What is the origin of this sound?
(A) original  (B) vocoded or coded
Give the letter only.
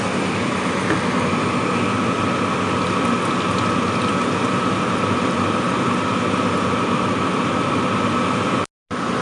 A